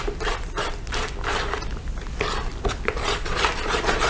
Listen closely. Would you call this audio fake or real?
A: real